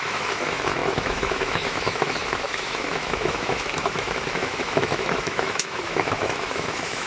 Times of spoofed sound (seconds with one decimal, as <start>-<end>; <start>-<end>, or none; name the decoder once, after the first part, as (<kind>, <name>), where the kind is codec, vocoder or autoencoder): 0.0-7.1 (autoencoder, DAC-VAE)